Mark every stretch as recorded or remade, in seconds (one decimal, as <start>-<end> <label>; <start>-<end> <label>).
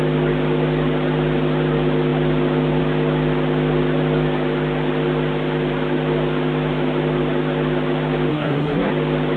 0.0-8.3 recorded; 8.3-8.9 remade; 8.9-9.4 recorded